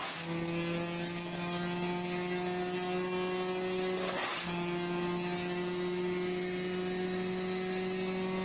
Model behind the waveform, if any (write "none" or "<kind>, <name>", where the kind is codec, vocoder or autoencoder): none